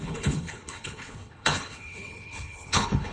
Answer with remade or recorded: remade